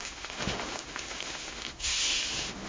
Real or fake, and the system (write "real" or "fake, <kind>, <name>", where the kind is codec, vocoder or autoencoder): fake, autoencoder, DAC-VAE